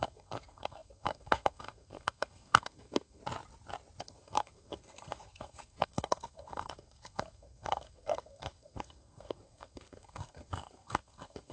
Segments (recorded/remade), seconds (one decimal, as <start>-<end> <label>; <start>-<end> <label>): 0.0-3.2 remade; 3.2-4.0 recorded; 4.0-11.5 remade